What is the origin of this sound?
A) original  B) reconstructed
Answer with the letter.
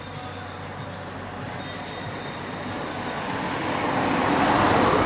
A